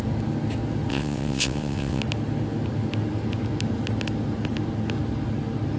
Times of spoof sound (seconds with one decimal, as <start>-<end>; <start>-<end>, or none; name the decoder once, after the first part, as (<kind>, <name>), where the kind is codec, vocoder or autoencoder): 0.9-2.0 (vocoder, WaveNeXt)